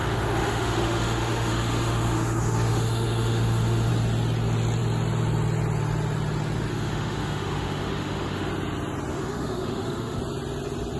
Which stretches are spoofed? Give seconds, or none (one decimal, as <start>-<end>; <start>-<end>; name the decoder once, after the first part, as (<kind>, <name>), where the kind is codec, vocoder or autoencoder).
0.0-3.9 (autoencoder, DAC-VAE); 6.7-8.5; 9.1-10.2